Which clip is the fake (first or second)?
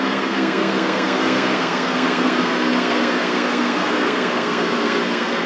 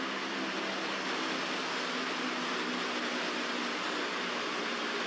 first